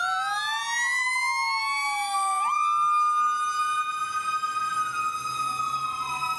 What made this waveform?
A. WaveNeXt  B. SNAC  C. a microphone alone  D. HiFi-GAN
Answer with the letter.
C